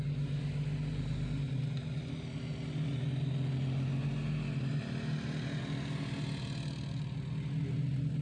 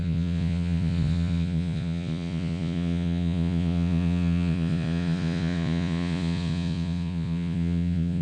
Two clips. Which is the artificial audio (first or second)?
second